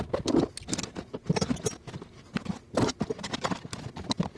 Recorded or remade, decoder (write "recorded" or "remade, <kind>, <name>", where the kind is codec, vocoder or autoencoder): recorded